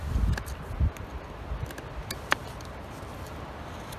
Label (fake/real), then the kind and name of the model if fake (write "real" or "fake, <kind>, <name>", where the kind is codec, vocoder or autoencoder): real